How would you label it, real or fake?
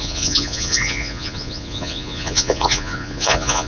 fake